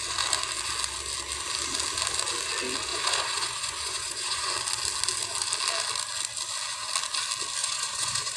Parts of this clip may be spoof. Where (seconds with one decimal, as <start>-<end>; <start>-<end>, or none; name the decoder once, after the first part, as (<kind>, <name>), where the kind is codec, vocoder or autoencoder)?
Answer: 2.9-4.5 (vocoder, Vocos); 7.6-8.4